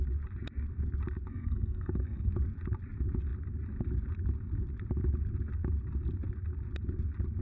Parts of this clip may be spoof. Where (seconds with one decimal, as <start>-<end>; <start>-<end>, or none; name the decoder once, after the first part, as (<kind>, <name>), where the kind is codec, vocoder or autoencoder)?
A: 1.3-2.3 (codec, SNAC)